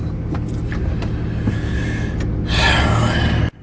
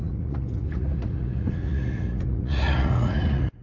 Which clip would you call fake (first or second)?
second